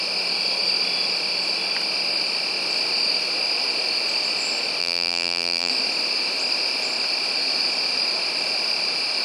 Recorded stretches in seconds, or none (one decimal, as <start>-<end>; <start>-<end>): 0.0-4.8; 5.7-9.2